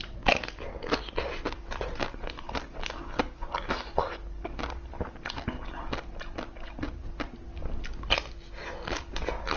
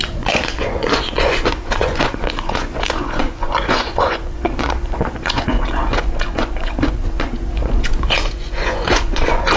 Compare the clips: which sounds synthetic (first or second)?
second